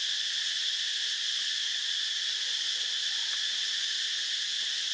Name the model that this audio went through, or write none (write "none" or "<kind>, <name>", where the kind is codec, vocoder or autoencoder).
none